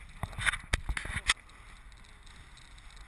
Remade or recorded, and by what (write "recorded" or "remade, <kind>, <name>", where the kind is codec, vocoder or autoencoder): recorded